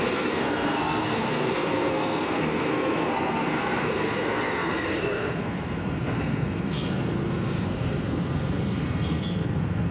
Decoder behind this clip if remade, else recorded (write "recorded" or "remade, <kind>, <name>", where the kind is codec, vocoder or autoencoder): remade, codec, SNAC